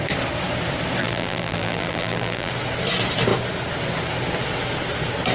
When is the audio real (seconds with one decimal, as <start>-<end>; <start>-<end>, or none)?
0.0-1.0; 2.5-5.3